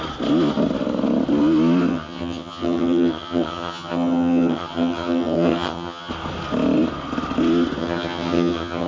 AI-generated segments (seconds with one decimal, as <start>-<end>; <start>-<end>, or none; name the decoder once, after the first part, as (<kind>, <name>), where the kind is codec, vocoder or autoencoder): 1.9-6.1 (vocoder, HiFi-GAN); 7.8-8.9